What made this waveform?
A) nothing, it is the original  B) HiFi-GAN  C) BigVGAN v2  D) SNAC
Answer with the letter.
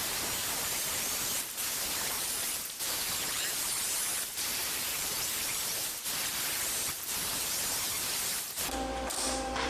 C